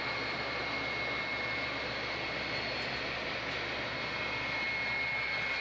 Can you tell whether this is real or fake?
real